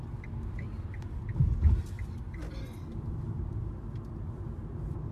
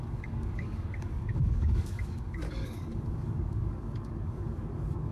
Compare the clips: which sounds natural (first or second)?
first